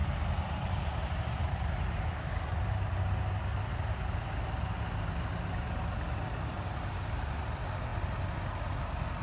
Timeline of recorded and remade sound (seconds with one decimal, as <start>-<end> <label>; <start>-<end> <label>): 0.0-2.9 remade; 2.9-3.7 recorded; 3.7-4.3 remade; 4.3-9.2 recorded